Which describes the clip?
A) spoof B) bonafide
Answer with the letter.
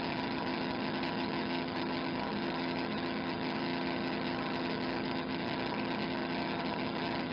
A